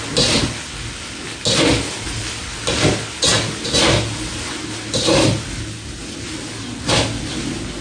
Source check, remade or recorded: recorded